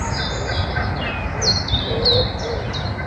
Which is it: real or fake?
real